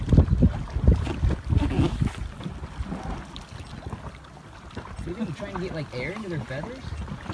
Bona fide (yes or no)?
yes